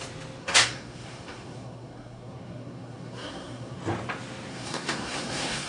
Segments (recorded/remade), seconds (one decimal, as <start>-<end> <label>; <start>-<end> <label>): 0.0-0.4 recorded; 0.4-3.8 remade; 3.8-4.5 recorded; 4.5-5.7 remade